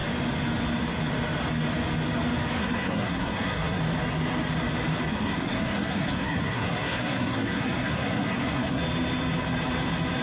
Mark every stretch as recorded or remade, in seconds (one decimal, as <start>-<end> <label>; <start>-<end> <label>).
0.0-2.6 recorded; 2.6-3.8 remade; 3.8-5.1 recorded; 5.1-8.8 remade; 8.8-10.2 recorded